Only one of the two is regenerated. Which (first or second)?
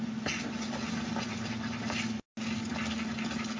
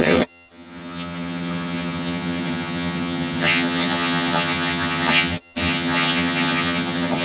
second